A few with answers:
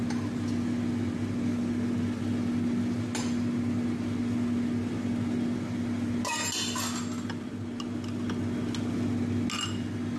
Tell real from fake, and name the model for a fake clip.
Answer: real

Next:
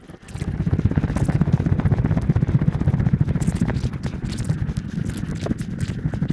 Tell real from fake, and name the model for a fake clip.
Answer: real